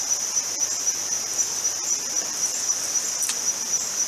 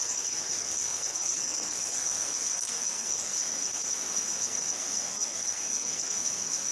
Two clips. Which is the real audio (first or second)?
first